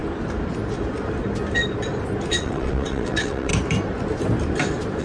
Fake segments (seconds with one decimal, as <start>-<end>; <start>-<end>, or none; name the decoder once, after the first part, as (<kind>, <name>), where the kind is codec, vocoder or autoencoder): 2.3-3.5 (vocoder, WaveNeXt)

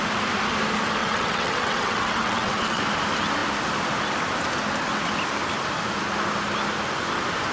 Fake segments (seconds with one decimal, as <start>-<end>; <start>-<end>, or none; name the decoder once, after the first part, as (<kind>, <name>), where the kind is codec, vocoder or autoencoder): 1.0-2.8 (vocoder, WaveNeXt)